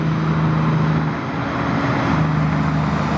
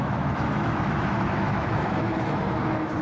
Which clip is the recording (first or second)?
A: first